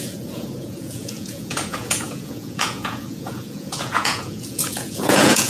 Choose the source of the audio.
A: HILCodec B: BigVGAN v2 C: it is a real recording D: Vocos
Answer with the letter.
D